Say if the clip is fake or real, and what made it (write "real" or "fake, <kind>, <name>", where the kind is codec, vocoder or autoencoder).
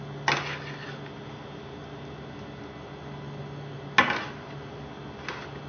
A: real